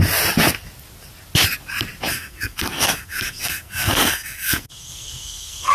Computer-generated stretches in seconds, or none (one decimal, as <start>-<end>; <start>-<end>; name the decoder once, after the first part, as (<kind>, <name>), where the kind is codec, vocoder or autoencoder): 2.1-5.7 (codec, SNAC)